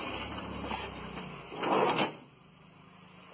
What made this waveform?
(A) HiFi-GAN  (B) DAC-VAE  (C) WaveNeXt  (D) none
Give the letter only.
D